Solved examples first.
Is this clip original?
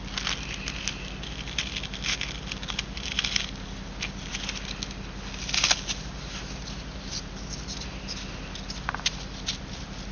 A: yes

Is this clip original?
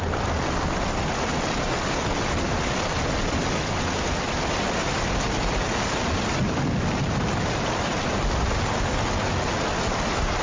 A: yes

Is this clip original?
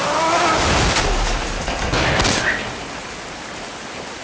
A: yes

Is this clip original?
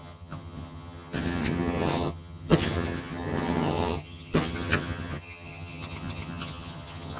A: no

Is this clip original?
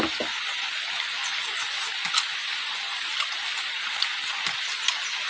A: yes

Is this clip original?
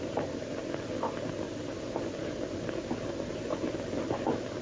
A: yes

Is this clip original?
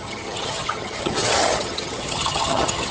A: no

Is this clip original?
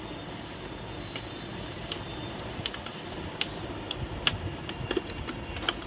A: yes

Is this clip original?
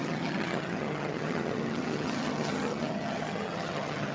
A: no